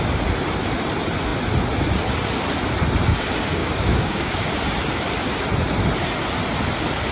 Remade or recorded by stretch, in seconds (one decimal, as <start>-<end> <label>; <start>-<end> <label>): 0.0-3.6 recorded; 3.6-4.5 remade; 4.5-7.1 recorded